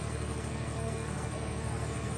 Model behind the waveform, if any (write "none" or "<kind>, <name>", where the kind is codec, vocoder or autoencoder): codec, SNAC